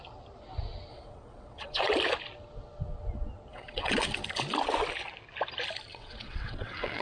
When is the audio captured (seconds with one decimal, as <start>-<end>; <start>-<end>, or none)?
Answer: 0.0-0.9; 1.9-3.5; 4.0-5.9